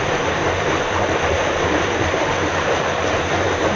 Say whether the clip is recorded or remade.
remade